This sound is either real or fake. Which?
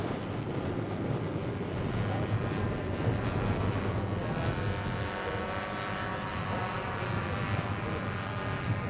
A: real